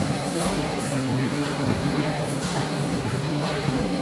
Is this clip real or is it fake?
fake